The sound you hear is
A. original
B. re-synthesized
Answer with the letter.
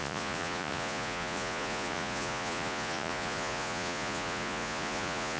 B